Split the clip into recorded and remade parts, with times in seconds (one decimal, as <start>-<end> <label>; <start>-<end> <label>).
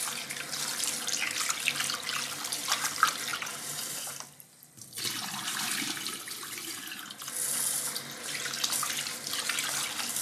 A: 0.0-3.3 recorded; 3.3-4.1 remade; 4.1-10.2 recorded